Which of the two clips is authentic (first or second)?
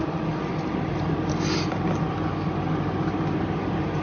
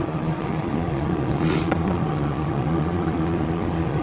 first